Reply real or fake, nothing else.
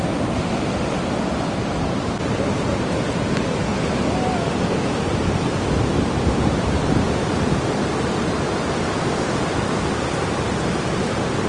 real